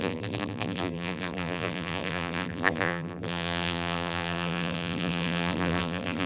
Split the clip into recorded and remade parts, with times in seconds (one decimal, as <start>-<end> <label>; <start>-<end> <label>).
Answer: 0.0-6.3 remade